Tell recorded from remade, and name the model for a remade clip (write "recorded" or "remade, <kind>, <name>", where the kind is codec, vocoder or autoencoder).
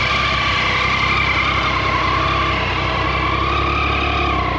recorded